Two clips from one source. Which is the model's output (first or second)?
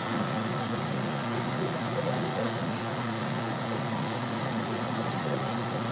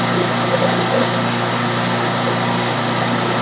first